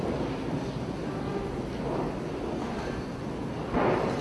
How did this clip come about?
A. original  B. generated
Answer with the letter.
A